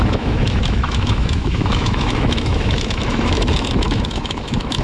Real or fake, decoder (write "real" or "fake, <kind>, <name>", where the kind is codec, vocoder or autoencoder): fake, autoencoder, DAC-VAE